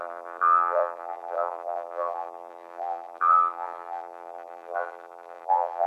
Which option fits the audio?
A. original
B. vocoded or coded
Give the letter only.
B